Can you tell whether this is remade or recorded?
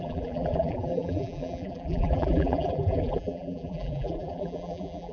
remade